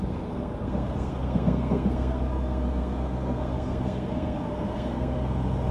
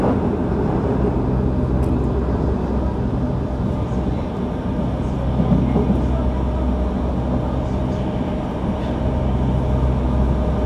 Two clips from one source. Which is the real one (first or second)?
second